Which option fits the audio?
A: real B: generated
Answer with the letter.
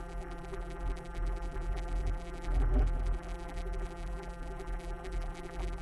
B